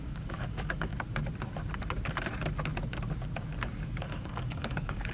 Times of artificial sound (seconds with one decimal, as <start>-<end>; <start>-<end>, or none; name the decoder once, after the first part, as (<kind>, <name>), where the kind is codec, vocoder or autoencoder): 0.0-0.9 (codec, DAC); 4.0-5.1